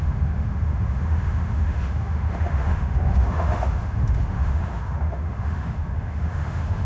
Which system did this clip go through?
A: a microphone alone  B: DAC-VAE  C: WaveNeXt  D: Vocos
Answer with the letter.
B